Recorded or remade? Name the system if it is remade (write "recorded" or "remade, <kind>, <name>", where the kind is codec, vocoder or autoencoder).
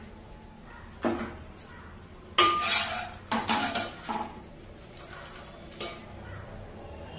recorded